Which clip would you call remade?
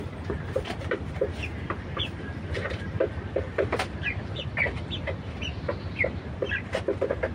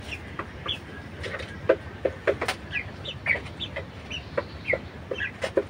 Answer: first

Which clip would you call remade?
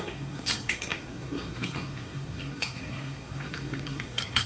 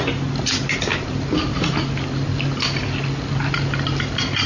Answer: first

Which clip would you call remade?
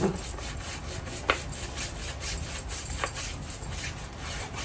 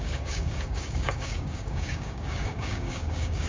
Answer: second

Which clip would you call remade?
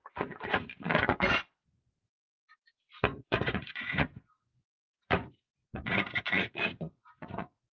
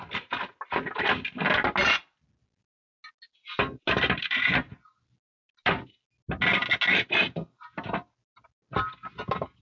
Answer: first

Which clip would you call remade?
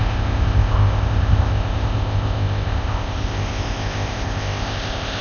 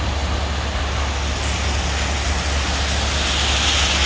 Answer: first